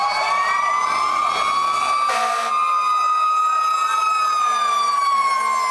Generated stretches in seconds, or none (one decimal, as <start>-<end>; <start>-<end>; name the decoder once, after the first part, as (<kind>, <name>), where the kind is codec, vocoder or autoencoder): 0.0-1.2 (vocoder, BigVGAN v2); 4.6-5.7